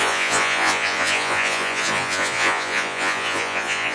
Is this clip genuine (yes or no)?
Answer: no